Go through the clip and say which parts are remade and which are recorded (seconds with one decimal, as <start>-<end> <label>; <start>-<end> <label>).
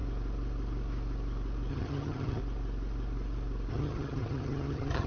0.0-1.7 recorded; 1.7-2.4 remade; 2.4-3.7 recorded; 3.7-5.1 remade